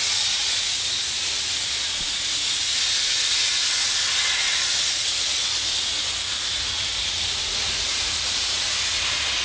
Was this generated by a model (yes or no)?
yes